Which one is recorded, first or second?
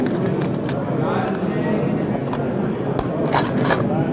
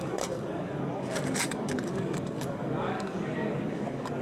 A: first